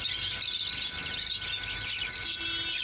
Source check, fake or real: real